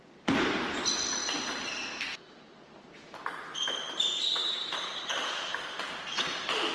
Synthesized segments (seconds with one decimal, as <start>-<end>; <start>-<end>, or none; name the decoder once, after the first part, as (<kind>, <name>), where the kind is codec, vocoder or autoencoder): 0.0-4.4 (vocoder, BigVGAN v2); 5.1-5.5; 6.3-6.7